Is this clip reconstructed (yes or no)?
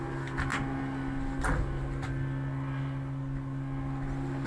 no